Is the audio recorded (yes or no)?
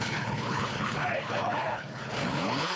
no